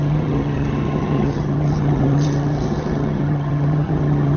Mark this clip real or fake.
fake